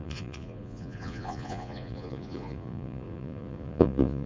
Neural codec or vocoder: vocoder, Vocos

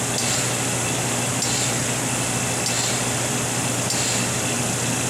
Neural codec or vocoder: none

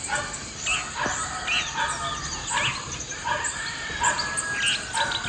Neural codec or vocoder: none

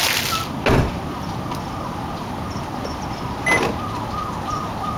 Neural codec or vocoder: none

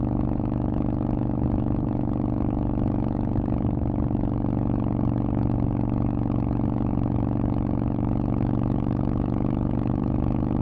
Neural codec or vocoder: autoencoder, DAC-VAE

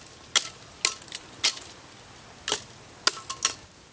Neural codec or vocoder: none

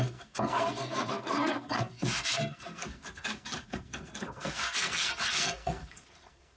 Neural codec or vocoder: codec, SNAC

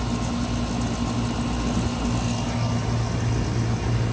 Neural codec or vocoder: none